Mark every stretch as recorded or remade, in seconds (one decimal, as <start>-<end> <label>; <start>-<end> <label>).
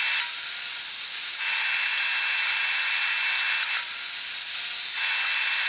0.0-5.7 recorded